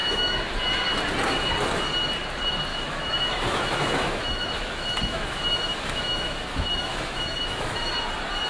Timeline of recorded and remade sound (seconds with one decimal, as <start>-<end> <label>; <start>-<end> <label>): 0.0-0.5 remade; 0.5-2.7 recorded; 2.7-7.8 remade; 7.8-8.5 recorded